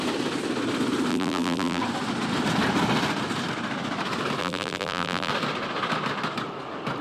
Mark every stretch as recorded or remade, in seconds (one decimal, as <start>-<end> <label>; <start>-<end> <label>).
0.0-1.1 recorded; 1.1-1.8 remade; 1.8-4.4 recorded; 4.4-5.3 remade; 5.3-7.0 recorded